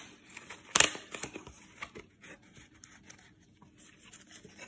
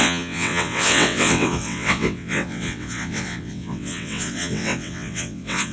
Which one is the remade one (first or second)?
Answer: second